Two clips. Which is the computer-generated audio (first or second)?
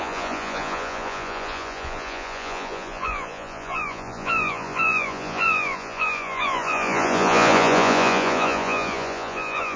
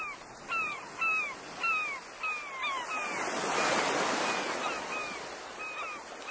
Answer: first